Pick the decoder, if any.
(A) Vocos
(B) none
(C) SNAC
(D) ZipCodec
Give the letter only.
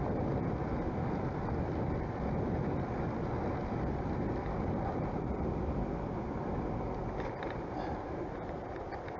B